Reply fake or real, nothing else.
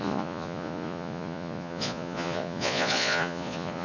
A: fake